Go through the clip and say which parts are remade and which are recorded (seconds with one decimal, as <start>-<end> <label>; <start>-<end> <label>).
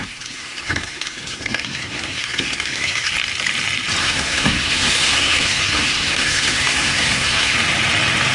0.0-3.1 remade; 3.1-4.0 recorded; 4.0-7.5 remade; 7.5-8.3 recorded